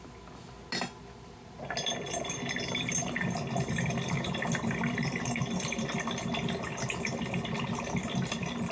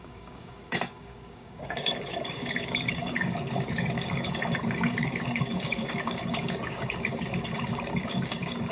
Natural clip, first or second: first